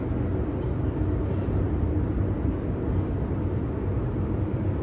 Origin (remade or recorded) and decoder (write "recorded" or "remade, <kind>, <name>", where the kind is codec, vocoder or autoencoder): recorded